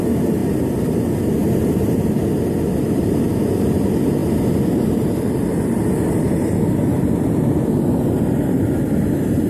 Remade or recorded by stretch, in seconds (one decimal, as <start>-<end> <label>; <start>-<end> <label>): 0.0-9.5 recorded